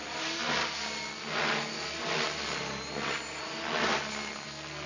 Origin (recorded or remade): recorded